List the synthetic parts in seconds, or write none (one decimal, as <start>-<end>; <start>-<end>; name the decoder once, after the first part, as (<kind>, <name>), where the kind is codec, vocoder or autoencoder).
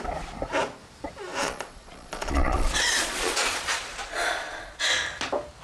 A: 1.4-4.8 (vocoder, Vocos)